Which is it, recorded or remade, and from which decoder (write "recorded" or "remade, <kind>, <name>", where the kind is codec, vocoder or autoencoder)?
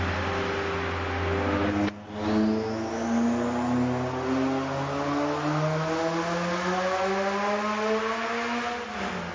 recorded